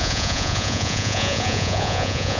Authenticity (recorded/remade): remade